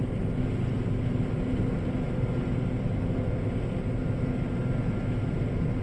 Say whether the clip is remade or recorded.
recorded